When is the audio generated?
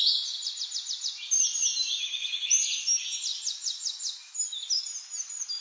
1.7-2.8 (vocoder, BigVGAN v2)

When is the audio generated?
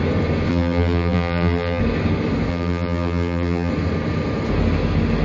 0.5-1.8 (vocoder, BigVGAN v2); 2.5-3.7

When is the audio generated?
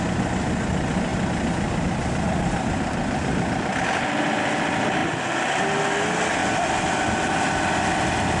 none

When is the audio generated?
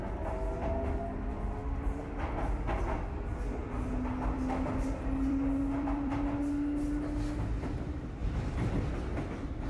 1.6-2.3 (vocoder, BigVGAN v2); 3.6-6.1; 8.2-9.2